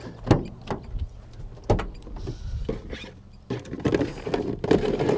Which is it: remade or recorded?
recorded